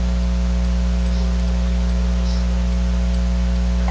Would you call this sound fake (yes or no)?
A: no